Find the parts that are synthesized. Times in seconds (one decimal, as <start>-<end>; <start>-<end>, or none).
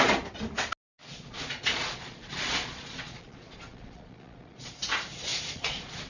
1.0-4.7; 5.3-6.1